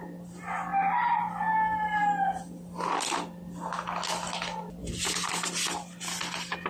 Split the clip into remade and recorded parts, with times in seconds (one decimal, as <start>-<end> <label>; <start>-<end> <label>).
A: 0.0-4.8 recorded; 4.8-6.7 remade